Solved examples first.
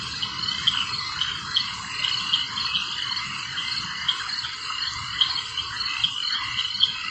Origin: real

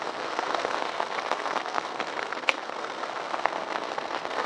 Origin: fake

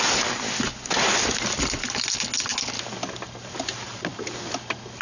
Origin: real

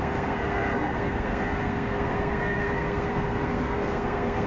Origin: fake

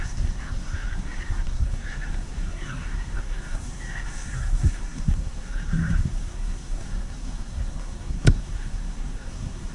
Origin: fake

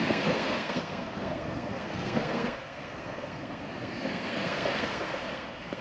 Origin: fake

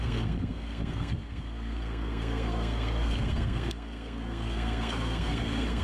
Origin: fake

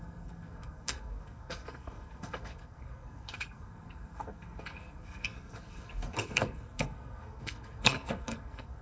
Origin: fake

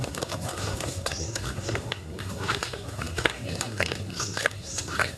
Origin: fake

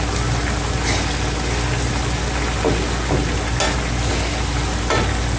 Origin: real